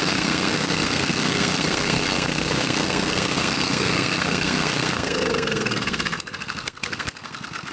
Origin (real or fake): fake